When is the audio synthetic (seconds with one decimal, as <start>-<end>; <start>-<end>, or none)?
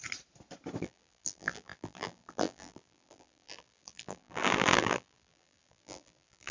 0.8-6.5